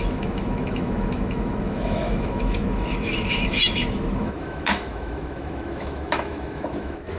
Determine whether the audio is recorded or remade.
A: remade